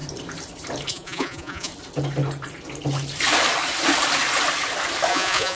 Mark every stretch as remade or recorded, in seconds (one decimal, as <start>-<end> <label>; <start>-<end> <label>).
0.0-0.9 recorded; 0.9-1.7 remade; 1.7-5.1 recorded; 5.1-5.6 remade